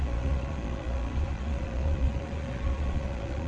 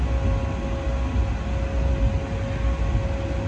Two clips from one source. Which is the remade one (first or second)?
first